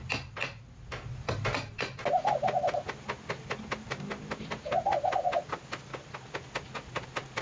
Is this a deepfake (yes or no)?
no